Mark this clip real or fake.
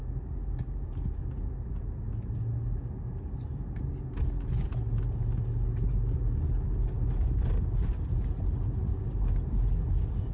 real